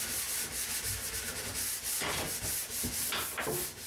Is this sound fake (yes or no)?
no